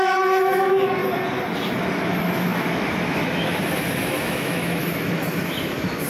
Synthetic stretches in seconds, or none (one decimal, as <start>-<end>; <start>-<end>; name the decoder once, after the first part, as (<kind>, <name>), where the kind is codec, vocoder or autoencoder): 0.0-1.0 (autoencoder, DAC-VAE); 1.8-6.1